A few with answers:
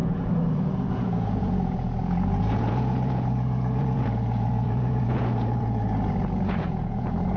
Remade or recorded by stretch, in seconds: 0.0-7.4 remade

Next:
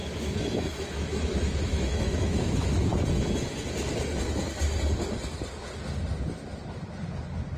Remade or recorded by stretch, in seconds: 0.0-2.9 remade; 2.9-7.6 recorded

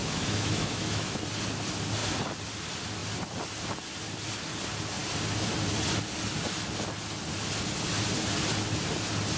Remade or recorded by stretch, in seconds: 0.0-1.2 remade; 1.2-9.4 recorded

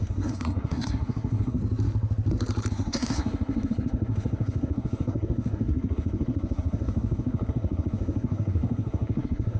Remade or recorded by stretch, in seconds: 0.0-1.6 remade; 1.6-2.7 recorded; 2.7-9.6 remade

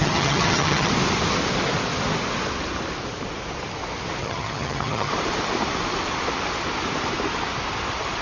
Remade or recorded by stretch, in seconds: 0.0-0.9 remade; 0.9-4.2 recorded; 4.2-5.1 remade; 5.1-8.2 recorded

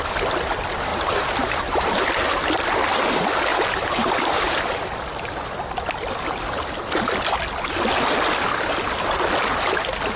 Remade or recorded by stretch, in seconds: 0.0-0.9 recorded; 0.9-2.0 remade; 2.0-3.5 recorded; 3.5-5.0 remade; 5.0-10.2 recorded